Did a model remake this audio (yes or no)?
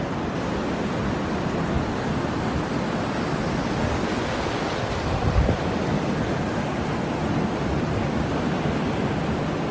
no